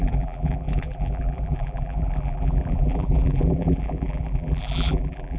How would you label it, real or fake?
fake